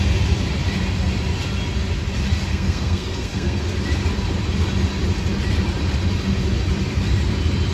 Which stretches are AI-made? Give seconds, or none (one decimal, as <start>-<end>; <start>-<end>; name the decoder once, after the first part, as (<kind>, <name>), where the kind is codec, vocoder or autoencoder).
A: 2.5-3.6 (codec, SNAC)